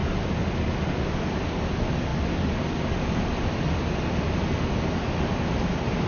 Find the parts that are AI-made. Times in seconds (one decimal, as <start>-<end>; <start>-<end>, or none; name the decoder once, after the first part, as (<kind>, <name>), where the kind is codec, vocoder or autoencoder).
0.0-0.5 (vocoder, BigVGAN v2)